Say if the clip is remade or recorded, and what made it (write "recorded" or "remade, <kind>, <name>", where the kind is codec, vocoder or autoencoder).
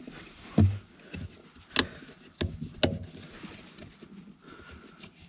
recorded